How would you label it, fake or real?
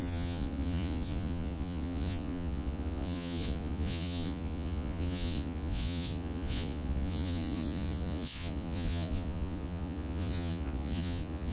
fake